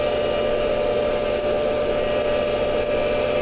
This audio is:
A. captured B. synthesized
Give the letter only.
A